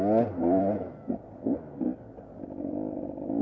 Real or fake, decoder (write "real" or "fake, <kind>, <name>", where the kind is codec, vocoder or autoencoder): real